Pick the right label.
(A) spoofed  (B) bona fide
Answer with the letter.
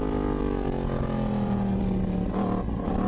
B